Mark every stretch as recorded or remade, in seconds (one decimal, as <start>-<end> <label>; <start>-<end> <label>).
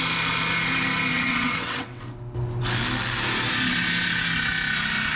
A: 0.0-1.1 recorded; 1.1-2.0 remade; 2.0-5.2 recorded